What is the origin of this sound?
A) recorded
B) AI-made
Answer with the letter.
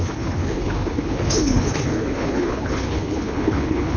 B